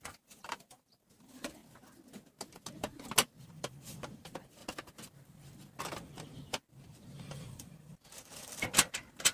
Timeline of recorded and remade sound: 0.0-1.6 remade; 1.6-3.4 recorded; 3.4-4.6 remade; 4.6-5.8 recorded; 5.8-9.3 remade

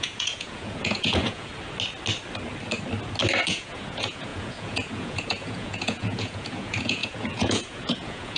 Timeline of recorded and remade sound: 0.0-1.5 remade; 1.5-3.4 recorded; 3.4-8.4 remade